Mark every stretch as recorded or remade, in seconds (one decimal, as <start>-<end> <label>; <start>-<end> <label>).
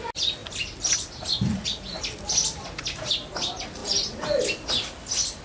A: 0.0-5.4 recorded